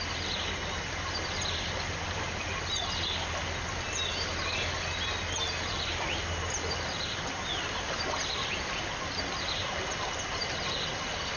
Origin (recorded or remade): recorded